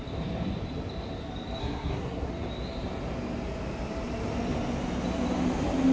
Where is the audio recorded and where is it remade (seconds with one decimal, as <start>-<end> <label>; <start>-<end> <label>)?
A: 0.0-1.6 recorded; 1.6-2.3 remade; 2.3-5.9 recorded